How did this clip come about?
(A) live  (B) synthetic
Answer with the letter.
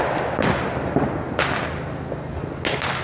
A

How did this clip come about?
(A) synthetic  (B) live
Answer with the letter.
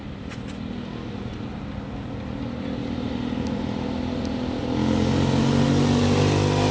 B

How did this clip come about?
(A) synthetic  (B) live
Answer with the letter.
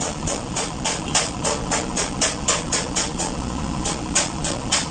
A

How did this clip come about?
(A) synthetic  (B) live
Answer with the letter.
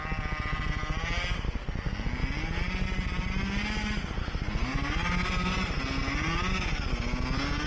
B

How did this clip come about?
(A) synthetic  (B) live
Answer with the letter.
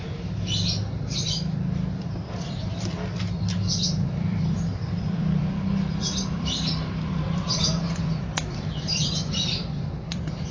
A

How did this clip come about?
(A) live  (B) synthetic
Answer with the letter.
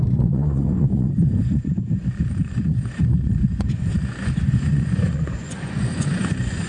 B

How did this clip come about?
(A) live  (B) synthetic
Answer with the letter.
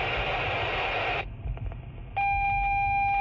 A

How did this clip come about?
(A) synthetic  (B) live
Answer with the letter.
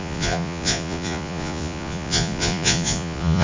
A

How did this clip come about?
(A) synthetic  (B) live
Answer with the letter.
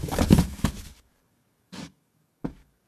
A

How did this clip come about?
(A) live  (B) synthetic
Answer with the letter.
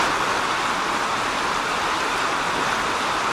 A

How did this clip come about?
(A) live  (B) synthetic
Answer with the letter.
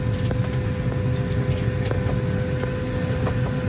A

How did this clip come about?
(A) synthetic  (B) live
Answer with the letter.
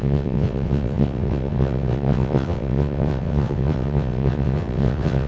A